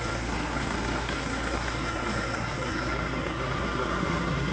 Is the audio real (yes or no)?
no